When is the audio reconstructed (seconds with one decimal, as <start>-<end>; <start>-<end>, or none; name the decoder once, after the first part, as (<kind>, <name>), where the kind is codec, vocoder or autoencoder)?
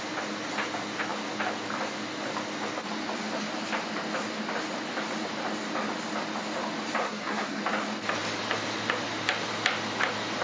7.0-7.6 (codec, SNAC)